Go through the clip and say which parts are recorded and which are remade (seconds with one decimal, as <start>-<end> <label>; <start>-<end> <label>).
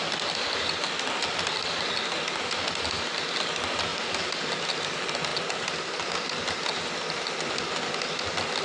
0.0-8.6 recorded